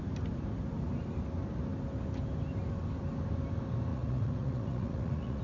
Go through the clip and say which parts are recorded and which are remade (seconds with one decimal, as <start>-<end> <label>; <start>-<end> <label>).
0.0-3.9 recorded; 3.9-5.4 remade